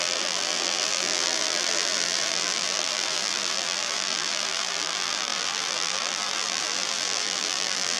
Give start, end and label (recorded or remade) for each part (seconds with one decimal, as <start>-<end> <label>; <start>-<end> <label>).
0.0-8.0 remade

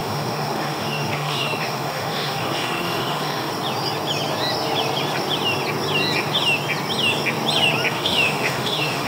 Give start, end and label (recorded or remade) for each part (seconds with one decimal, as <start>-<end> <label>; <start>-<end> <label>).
0.0-3.5 remade; 3.5-7.9 recorded; 7.9-9.1 remade

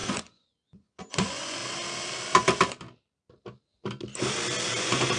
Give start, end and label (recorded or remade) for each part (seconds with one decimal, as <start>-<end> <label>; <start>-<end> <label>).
0.0-1.6 remade; 1.6-4.7 recorded; 4.7-5.2 remade

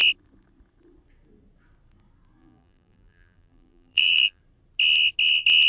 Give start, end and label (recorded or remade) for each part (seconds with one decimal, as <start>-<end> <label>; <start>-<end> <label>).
0.0-2.4 recorded; 2.4-4.4 remade; 4.4-5.7 recorded

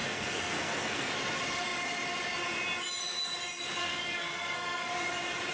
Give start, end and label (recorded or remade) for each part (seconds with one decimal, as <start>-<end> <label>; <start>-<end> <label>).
0.0-1.1 remade; 1.1-3.8 recorded; 3.8-4.9 remade; 4.9-5.5 recorded

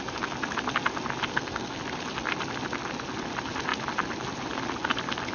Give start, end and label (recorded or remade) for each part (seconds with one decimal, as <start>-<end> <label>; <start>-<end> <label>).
0.0-1.3 recorded; 1.3-1.8 remade; 1.8-5.3 recorded

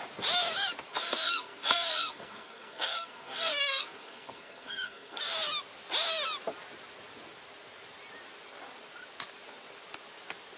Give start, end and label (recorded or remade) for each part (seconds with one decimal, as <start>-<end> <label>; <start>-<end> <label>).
0.0-0.9 recorded; 0.9-5.2 remade; 5.2-10.6 recorded

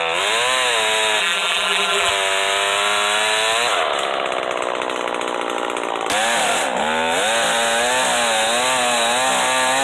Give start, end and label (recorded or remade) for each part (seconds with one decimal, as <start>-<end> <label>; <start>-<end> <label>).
0.0-1.2 recorded; 1.2-2.1 remade; 2.1-9.8 recorded